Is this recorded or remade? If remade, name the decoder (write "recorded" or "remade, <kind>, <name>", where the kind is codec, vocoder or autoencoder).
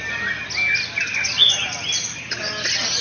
recorded